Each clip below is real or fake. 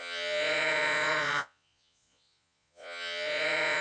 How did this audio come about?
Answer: fake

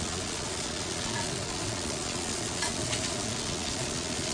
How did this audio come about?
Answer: fake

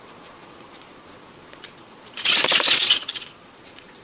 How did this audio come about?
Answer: fake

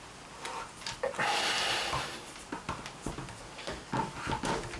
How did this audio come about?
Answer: real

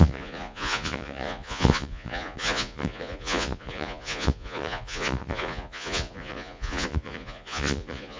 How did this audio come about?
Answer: fake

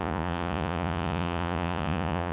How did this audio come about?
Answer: fake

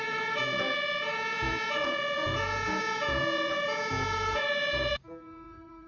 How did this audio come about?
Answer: fake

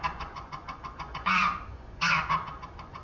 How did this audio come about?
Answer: fake